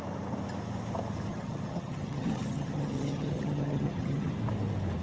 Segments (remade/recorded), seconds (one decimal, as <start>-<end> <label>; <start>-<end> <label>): 0.0-1.3 recorded; 1.3-4.3 remade; 4.3-5.0 recorded